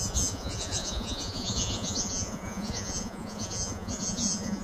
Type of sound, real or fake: fake